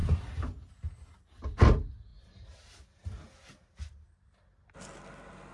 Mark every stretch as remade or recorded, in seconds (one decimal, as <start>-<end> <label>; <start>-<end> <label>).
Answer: 0.0-5.5 recorded